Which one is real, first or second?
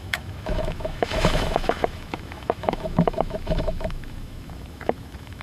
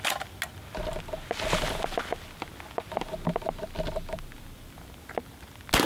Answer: second